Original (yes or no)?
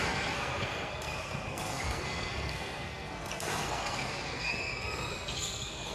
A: no